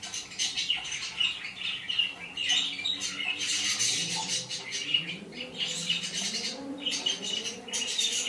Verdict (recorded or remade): recorded